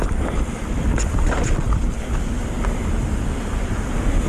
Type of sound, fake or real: real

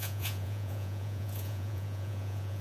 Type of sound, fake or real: fake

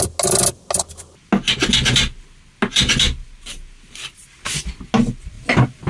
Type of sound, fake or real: real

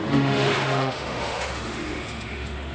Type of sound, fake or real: fake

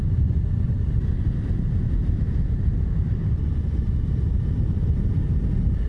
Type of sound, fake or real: real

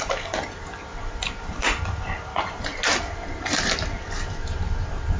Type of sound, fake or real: fake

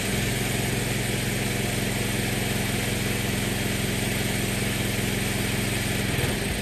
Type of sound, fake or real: real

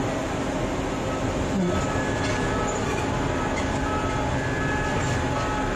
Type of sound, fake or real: real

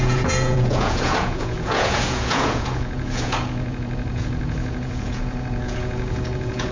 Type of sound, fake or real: fake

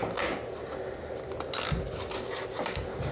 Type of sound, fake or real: real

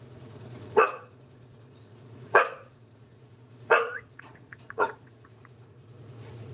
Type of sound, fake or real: fake